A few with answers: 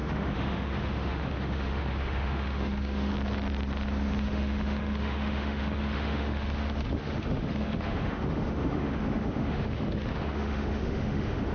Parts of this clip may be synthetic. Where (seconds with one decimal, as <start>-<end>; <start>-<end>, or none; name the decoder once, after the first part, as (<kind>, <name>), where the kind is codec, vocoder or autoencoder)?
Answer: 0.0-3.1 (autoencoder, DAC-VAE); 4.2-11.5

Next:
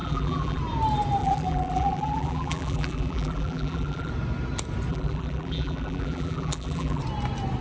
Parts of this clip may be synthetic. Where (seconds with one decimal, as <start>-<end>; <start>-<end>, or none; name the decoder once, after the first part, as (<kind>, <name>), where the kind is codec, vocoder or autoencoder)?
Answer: 0.0-0.6 (vocoder, BigVGAN v2); 1.2-4.1; 4.9-7.0

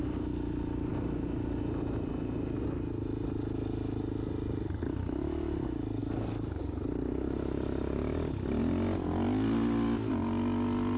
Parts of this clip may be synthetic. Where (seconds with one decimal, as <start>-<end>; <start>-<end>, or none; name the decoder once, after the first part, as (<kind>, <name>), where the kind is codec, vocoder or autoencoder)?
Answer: none

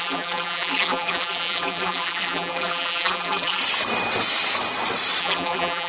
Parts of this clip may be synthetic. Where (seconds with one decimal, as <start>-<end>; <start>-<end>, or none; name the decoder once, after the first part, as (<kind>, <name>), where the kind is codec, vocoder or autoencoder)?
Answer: 0.0-3.6 (vocoder, BigVGAN v2); 5.2-5.9

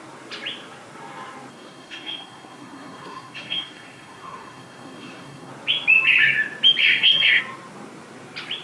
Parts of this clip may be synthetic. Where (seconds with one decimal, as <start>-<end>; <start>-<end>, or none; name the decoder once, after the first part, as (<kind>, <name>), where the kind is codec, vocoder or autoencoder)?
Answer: 1.5-5.5 (codec, SNAC); 6.8-7.4